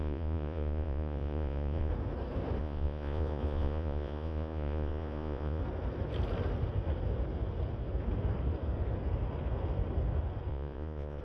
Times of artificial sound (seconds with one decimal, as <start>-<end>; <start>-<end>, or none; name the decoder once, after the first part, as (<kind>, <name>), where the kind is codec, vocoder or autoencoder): 0.0-1.9 (vocoder, Vocos); 2.6-5.6; 10.5-11.2